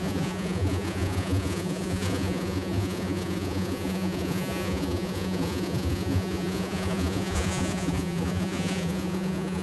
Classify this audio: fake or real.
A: fake